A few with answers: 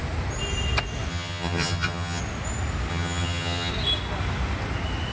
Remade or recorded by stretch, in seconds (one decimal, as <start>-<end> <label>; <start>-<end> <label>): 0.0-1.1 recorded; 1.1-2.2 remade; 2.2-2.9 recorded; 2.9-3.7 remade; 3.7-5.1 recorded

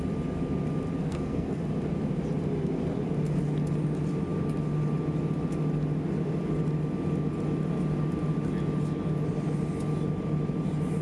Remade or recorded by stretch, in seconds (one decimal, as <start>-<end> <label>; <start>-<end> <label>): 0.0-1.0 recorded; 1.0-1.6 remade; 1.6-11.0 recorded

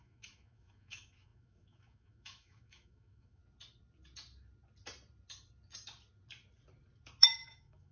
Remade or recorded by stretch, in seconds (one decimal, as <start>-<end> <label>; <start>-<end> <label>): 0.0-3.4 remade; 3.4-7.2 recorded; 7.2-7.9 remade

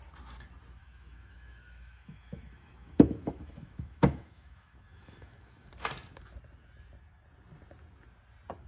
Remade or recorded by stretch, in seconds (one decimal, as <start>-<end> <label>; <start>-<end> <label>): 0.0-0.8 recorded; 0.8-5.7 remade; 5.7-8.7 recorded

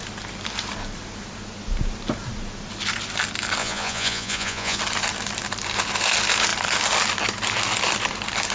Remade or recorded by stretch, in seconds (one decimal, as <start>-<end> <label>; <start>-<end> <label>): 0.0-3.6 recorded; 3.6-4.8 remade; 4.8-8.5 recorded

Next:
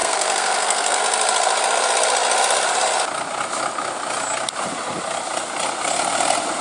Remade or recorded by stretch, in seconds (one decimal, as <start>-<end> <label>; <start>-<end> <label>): 0.0-1.0 remade; 1.0-6.6 recorded

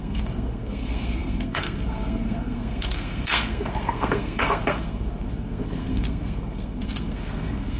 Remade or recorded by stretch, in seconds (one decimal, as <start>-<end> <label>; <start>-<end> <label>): 0.0-7.8 remade